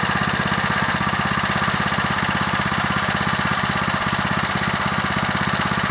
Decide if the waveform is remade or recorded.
recorded